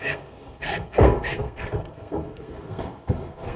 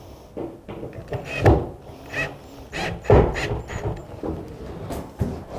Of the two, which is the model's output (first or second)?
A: first